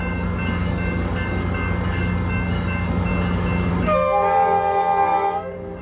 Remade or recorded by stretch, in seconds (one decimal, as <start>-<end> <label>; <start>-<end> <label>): 0.0-3.1 remade; 3.1-3.7 recorded; 3.7-5.8 remade